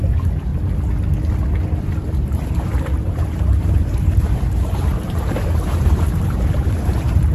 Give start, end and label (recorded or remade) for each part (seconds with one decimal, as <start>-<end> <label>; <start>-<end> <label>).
0.0-0.5 remade; 0.5-2.1 recorded; 2.1-7.3 remade